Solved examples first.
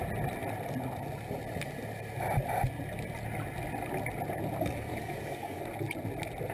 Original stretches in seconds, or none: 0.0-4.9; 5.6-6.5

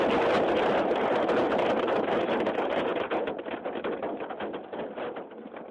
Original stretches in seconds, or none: 0.0-5.7

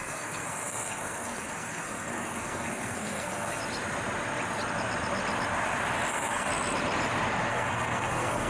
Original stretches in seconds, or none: 3.6-6.1; 6.5-7.5

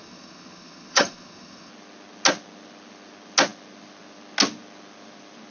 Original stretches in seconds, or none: 1.7-5.5

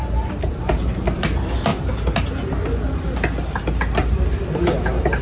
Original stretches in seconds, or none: 0.0-5.2

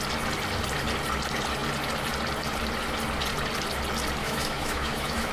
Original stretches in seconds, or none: 0.0-4.2

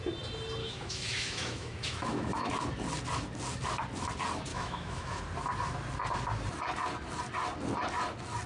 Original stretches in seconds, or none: 0.0-0.6; 2.5-4.5; 5.2-8.5